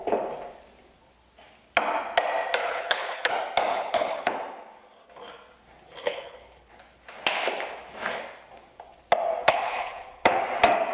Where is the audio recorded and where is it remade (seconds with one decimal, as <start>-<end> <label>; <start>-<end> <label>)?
0.0-2.6 recorded; 2.6-3.3 remade; 3.3-3.7 recorded; 3.7-4.3 remade; 4.3-6.0 recorded; 6.0-6.7 remade; 6.7-9.4 recorded; 9.4-10.4 remade; 10.4-10.9 recorded